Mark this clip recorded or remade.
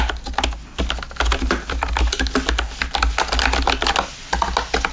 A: recorded